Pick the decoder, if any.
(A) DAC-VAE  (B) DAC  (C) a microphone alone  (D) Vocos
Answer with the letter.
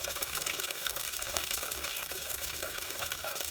B